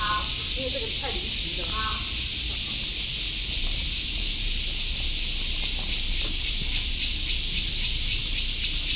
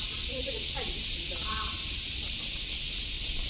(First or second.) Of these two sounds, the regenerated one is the second